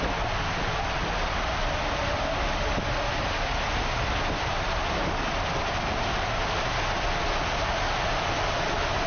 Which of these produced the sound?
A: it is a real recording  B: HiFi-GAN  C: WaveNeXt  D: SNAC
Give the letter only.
A